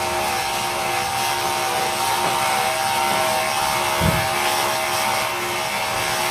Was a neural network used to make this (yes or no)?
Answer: no